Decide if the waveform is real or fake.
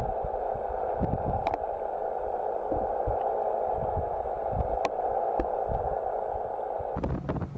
real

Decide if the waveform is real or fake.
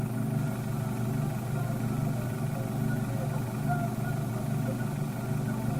real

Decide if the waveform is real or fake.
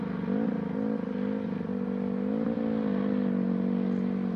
real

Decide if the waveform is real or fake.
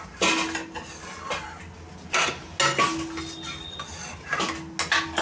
real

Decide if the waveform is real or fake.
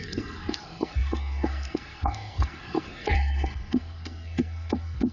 fake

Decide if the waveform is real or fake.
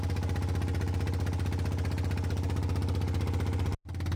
real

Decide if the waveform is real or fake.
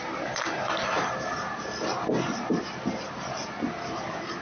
real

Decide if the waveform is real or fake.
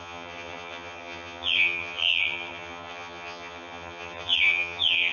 fake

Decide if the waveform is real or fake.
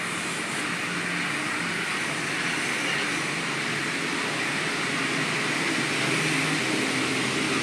real